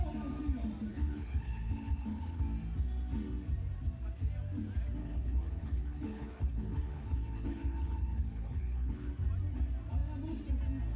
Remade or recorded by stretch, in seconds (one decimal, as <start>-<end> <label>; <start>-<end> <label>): 0.0-0.9 recorded; 0.9-2.4 remade; 2.4-5.0 recorded; 5.0-9.1 remade; 9.1-11.0 recorded